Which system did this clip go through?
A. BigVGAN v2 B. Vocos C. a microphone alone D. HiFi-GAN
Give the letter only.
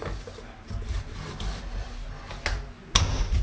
C